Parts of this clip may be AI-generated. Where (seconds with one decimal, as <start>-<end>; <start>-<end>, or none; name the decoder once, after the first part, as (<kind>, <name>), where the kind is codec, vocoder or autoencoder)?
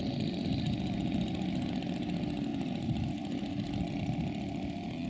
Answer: none